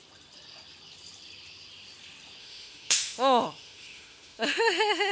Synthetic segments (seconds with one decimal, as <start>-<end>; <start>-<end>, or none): 2.4-5.1